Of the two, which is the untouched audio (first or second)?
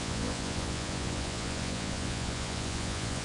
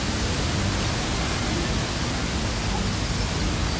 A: second